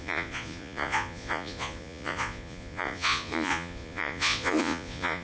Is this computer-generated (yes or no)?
yes